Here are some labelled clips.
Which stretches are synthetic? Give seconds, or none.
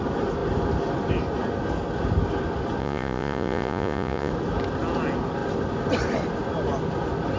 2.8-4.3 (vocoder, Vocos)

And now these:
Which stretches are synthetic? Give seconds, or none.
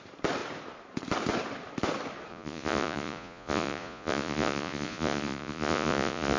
2.3-6.4 (vocoder, Vocos)